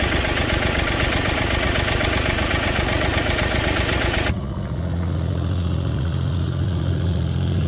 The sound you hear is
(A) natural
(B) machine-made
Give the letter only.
B